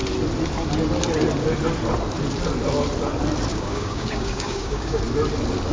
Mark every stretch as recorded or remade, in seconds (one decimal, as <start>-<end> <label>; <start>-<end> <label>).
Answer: 0.0-3.5 recorded; 3.5-5.0 remade; 5.0-5.7 recorded